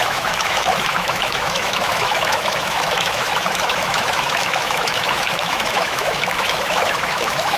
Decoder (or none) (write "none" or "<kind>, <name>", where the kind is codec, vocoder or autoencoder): autoencoder, DAC-VAE